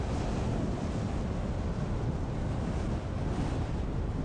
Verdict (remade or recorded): recorded